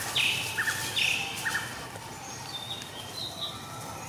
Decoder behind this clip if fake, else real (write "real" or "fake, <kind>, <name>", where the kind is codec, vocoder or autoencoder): real